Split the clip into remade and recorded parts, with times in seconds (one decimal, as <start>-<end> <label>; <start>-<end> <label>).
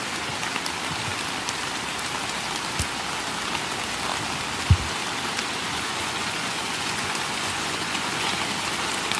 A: 0.0-5.6 recorded; 5.6-8.3 remade; 8.3-9.2 recorded